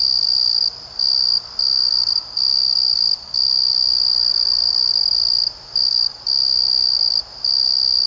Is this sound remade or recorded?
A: recorded